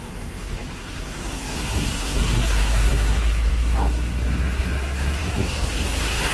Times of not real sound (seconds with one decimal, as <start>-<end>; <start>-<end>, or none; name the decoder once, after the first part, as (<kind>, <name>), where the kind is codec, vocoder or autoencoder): 0.0-6.3 (codec, SNAC)